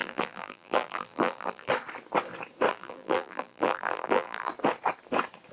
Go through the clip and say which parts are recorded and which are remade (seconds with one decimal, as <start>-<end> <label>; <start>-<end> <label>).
0.0-1.7 remade; 1.7-2.7 recorded; 2.7-4.5 remade; 4.5-5.5 recorded